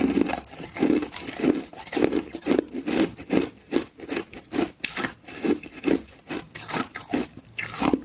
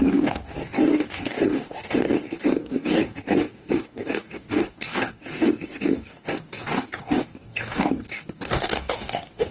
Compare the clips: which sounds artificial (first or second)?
second